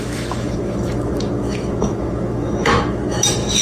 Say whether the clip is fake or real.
fake